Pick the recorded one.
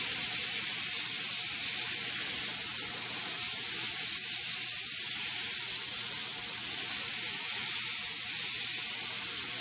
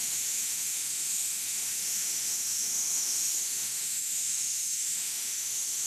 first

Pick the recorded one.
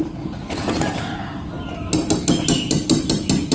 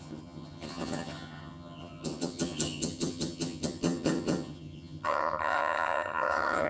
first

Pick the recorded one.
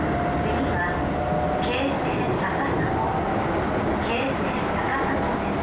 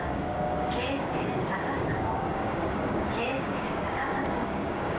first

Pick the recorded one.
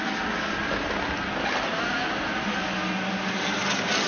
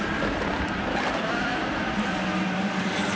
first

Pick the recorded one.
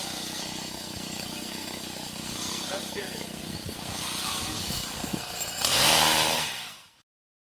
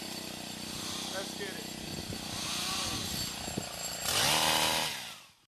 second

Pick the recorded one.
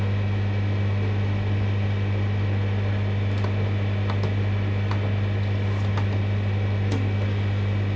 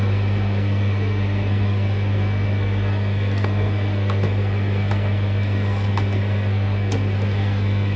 first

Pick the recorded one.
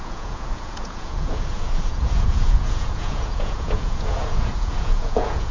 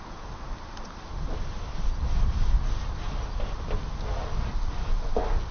second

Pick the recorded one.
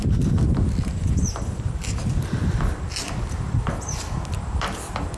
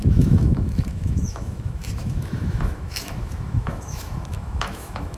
first